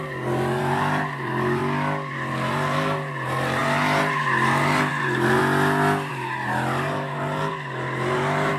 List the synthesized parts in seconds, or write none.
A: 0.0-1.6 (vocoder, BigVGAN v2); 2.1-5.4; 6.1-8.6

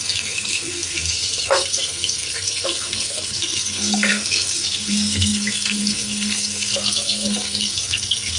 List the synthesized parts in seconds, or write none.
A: 0.0-8.4 (codec, SNAC)

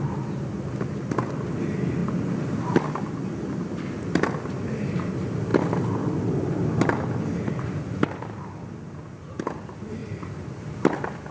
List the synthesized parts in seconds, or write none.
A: none

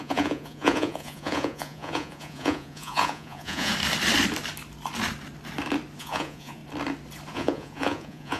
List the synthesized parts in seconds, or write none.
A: 0.0-3.7 (vocoder, Vocos); 6.0-6.6; 7.3-8.4

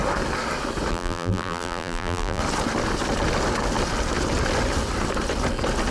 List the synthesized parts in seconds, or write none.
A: 0.9-2.4 (vocoder, BigVGAN v2)